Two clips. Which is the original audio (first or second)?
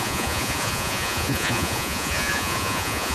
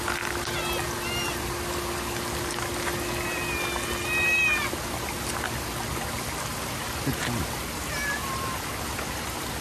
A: second